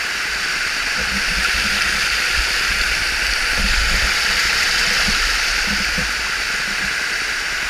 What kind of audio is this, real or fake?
real